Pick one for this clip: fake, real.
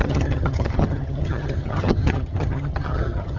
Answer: fake